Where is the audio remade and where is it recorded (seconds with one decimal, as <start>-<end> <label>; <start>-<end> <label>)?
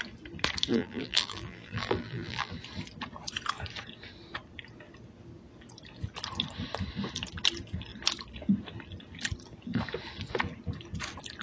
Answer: 0.0-0.7 recorded; 0.7-2.5 remade; 2.5-11.4 recorded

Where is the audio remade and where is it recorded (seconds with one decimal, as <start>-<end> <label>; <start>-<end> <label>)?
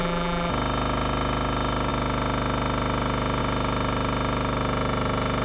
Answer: 0.0-0.5 remade; 0.5-5.4 recorded